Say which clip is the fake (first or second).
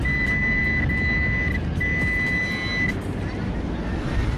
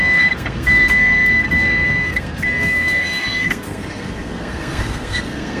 second